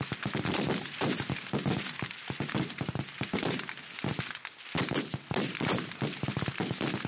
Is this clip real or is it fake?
real